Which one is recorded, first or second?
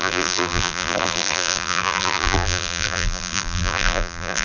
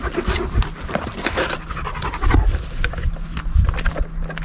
second